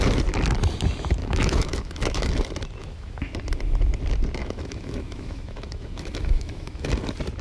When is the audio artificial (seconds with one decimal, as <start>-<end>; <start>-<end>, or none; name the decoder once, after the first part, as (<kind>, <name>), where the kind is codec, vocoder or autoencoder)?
1.2-2.3 (autoencoder, DAC-VAE); 2.8-3.3; 4.4-6.9